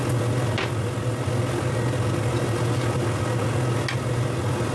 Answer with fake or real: real